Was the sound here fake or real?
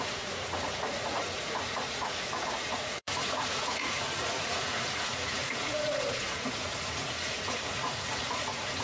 fake